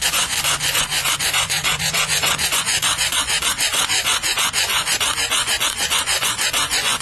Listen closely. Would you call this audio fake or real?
fake